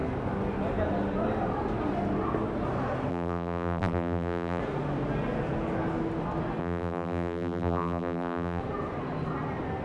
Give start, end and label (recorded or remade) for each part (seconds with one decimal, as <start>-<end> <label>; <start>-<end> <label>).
0.0-3.1 recorded; 3.1-4.6 remade; 4.6-6.6 recorded; 6.6-8.6 remade; 8.6-9.8 recorded